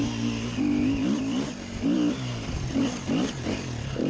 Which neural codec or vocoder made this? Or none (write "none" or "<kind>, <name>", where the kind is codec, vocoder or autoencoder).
none